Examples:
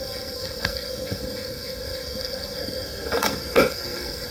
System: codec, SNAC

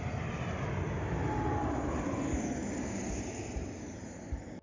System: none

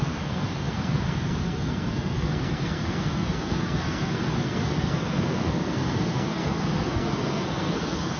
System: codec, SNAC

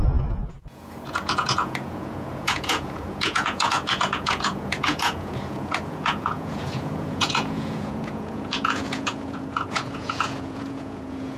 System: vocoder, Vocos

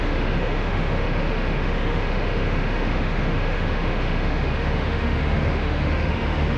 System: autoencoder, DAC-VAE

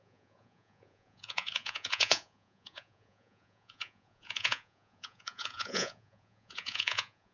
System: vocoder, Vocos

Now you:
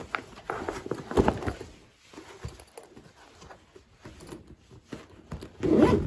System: none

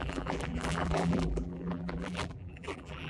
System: vocoder, BigVGAN v2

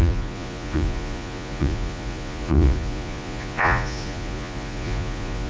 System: vocoder, Vocos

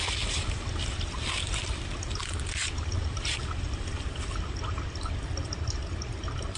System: none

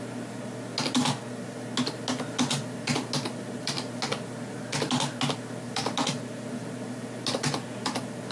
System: none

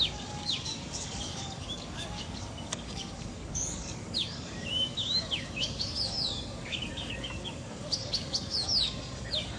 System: codec, DAC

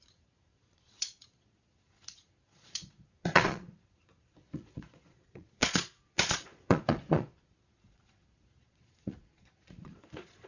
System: vocoder, Vocos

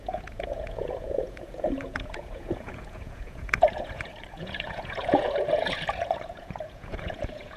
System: vocoder, Vocos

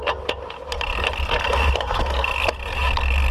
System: none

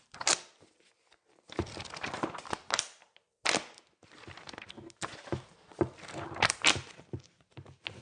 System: none